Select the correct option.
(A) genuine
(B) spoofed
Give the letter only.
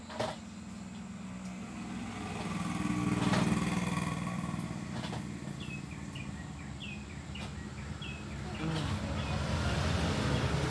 A